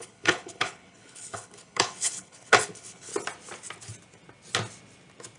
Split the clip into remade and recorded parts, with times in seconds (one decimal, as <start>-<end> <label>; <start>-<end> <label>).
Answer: 0.0-3.1 remade; 3.1-5.4 recorded